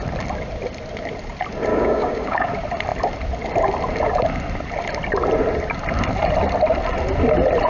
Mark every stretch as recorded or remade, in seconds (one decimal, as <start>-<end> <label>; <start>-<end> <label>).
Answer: 0.0-1.7 recorded; 1.7-2.5 remade; 2.5-7.7 recorded